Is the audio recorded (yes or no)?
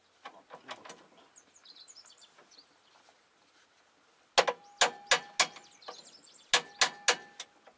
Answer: yes